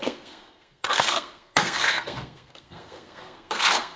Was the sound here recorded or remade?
remade